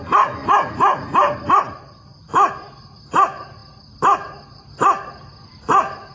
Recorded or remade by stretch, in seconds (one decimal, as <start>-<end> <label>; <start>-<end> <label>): 0.0-6.1 recorded

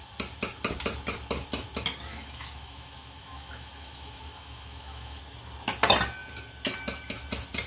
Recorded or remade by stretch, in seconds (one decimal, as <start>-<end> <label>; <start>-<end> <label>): 0.0-2.1 recorded; 2.1-5.2 remade; 5.2-7.7 recorded

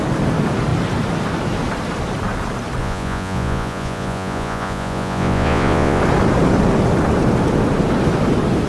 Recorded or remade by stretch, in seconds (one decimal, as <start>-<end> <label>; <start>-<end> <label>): 0.0-2.8 recorded; 2.8-6.0 remade; 6.0-8.7 recorded

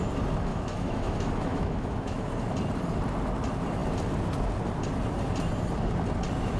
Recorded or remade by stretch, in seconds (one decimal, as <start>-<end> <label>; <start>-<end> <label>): 0.0-0.5 recorded; 0.5-2.3 remade; 2.3-6.6 recorded